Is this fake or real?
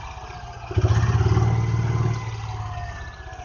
real